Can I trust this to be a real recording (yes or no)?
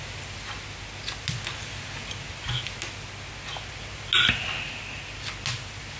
yes